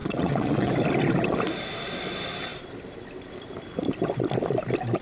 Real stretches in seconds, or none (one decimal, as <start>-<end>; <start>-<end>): 0.7-5.0